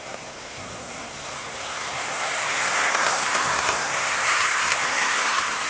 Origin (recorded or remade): remade